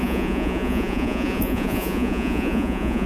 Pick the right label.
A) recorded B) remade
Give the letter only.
B